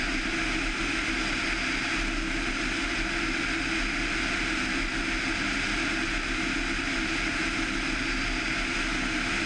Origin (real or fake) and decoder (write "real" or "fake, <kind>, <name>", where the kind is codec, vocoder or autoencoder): real